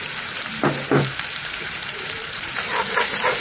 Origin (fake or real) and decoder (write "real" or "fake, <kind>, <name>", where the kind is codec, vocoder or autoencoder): fake, vocoder, BigVGAN v2